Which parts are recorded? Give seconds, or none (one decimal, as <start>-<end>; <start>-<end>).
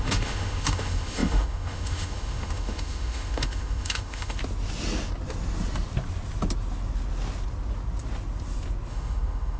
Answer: 4.4-8.9